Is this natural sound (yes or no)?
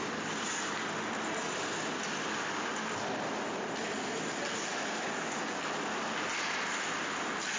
yes